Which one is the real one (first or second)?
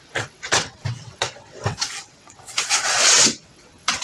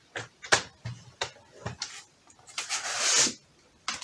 second